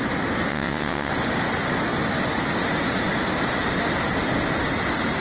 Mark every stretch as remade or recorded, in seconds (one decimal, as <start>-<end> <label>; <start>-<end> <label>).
0.0-0.5 recorded; 0.5-1.1 remade; 1.1-5.2 recorded